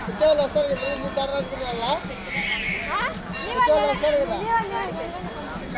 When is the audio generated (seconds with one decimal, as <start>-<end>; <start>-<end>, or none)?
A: none